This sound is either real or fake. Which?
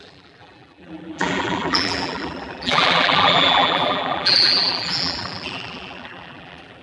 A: fake